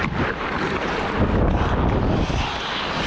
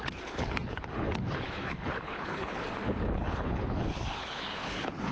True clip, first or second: first